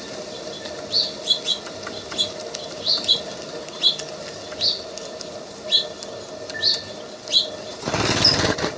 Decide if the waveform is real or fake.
real